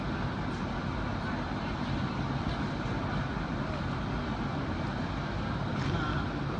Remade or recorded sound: recorded